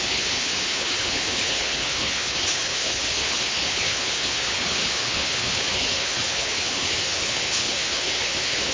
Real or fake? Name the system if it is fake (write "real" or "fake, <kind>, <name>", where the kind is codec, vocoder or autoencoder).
fake, codec, HILCodec